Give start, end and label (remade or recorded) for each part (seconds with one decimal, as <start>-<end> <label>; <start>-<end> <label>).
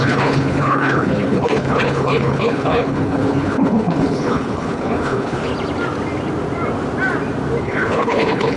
0.0-5.5 remade; 5.5-7.6 recorded; 7.6-8.6 remade